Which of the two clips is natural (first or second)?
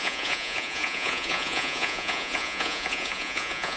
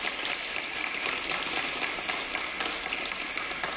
second